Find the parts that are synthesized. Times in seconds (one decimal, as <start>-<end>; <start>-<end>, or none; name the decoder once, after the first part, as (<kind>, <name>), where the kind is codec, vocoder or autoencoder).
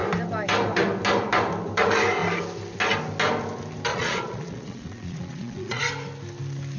3.9-5.8 (vocoder, Vocos)